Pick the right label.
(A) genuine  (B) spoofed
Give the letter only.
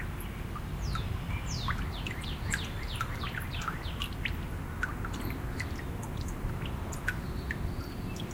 A